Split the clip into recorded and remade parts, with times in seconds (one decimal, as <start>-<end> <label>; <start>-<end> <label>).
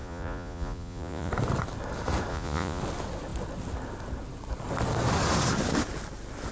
0.0-1.3 remade; 1.3-2.3 recorded; 2.3-2.8 remade; 2.8-6.5 recorded